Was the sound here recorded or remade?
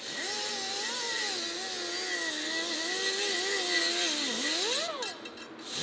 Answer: recorded